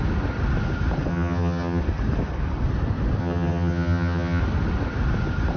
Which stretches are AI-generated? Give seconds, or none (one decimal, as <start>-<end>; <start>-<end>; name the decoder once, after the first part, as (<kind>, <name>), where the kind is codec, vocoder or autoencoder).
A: 1.1-1.8 (vocoder, HiFi-GAN); 3.2-4.4